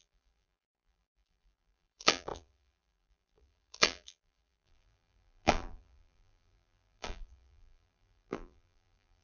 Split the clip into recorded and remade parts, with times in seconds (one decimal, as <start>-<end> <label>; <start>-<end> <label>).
0.0-9.2 remade

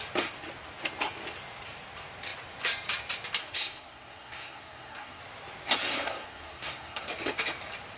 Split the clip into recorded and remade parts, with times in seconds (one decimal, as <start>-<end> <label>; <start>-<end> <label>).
0.0-3.4 recorded; 3.4-5.2 remade; 5.2-5.9 recorded; 5.9-7.1 remade; 7.1-8.0 recorded

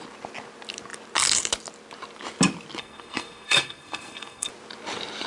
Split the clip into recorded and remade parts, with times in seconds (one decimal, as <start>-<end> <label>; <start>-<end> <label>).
0.0-2.8 recorded; 2.8-4.5 remade; 4.5-5.3 recorded

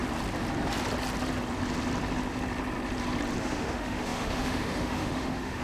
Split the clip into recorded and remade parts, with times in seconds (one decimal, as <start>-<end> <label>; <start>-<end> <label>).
0.0-3.4 recorded; 3.4-5.6 remade

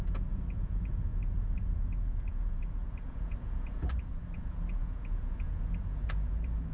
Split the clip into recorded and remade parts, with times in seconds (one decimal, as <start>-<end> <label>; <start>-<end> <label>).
0.0-6.7 remade

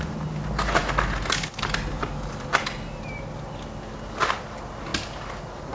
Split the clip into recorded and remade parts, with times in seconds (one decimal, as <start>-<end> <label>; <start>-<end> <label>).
0.0-5.7 recorded